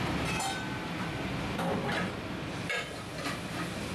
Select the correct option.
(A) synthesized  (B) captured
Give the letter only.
B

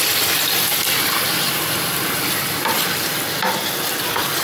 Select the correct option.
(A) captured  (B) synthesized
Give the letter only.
A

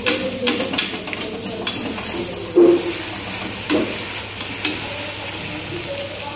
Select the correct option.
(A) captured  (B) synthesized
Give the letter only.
A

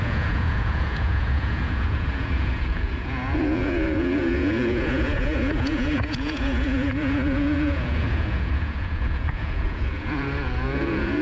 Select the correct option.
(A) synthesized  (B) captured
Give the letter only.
A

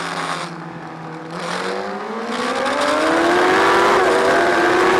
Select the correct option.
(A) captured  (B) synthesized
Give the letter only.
A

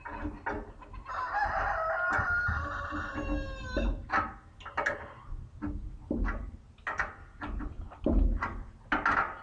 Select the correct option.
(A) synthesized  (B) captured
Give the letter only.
B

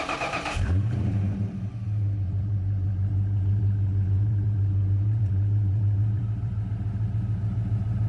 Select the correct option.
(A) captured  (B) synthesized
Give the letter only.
B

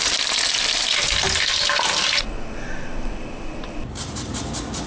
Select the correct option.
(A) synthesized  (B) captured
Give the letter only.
B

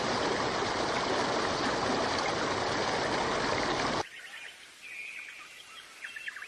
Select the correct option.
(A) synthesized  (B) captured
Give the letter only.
B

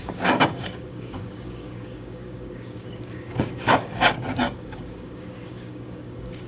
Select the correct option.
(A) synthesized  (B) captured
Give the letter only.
A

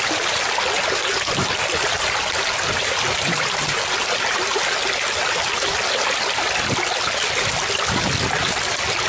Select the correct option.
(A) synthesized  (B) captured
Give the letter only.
B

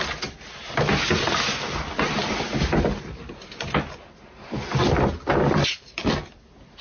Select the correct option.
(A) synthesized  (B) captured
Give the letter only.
B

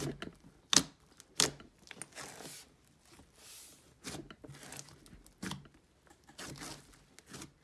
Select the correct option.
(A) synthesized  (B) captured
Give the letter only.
B